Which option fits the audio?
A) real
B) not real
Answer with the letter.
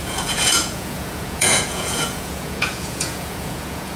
B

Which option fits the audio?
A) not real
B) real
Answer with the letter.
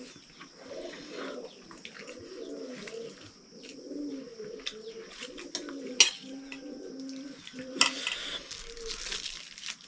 B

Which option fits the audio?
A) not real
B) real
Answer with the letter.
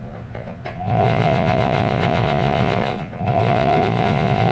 A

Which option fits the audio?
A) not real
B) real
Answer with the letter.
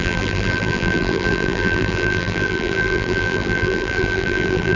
A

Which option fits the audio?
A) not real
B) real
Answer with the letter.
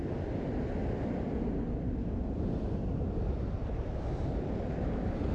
B